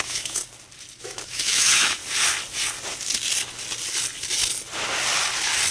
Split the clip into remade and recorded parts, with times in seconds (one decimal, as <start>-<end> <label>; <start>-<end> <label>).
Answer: 0.0-0.4 remade; 0.4-1.0 recorded; 1.0-2.0 remade; 2.0-5.7 recorded